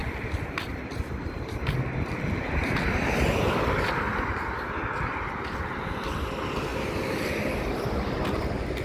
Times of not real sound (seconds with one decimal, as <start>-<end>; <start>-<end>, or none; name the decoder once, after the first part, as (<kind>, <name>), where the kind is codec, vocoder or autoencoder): 0.0-1.5 (vocoder, BigVGAN v2)